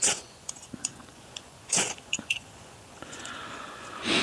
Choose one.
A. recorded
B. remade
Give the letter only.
B